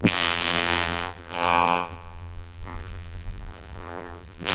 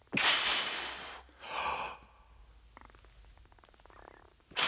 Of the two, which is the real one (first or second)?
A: second